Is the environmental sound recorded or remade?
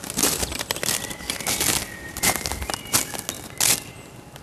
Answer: recorded